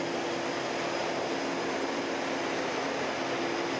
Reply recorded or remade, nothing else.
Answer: recorded